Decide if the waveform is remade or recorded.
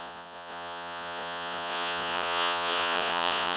remade